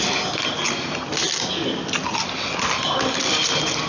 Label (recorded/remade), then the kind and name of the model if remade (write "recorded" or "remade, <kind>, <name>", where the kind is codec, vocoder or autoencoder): recorded